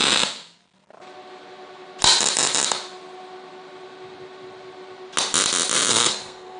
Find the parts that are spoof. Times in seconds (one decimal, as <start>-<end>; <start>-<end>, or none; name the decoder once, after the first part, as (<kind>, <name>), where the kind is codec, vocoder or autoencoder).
5.9-6.6 (codec, SNAC)